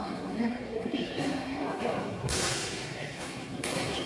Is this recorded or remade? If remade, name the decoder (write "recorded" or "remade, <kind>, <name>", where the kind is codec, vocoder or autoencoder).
remade, codec, SNAC